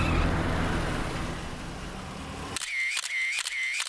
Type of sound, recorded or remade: recorded